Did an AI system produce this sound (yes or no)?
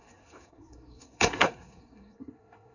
yes